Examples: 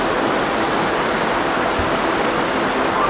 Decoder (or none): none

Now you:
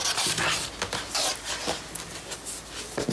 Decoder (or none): none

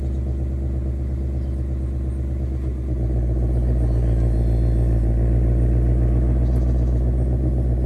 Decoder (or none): none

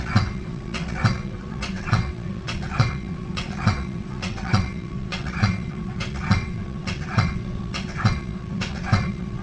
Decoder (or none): vocoder, WaveNeXt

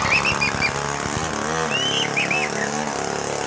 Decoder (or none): none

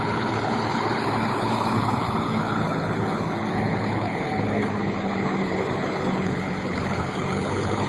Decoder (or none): codec, HILCodec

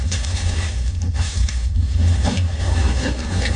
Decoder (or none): codec, SNAC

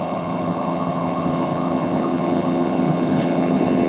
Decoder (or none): vocoder, HiFi-GAN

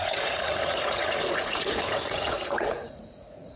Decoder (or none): vocoder, Vocos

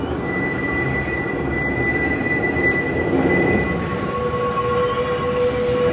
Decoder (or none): none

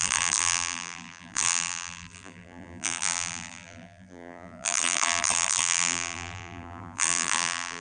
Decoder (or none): vocoder, BigVGAN v2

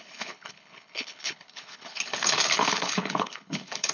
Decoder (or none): codec, HILCodec